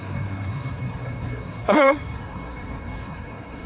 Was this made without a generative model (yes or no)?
no